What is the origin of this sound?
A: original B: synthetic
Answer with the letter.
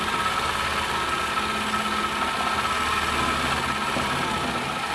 A